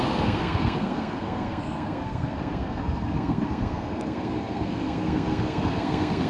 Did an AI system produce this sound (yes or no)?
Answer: yes